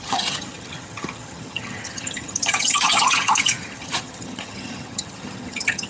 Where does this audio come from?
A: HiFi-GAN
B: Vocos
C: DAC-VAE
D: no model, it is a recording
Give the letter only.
A